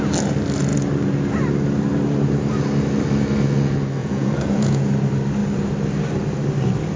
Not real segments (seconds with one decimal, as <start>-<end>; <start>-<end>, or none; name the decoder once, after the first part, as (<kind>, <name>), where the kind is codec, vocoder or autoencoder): 4.0-4.9 (vocoder, Vocos)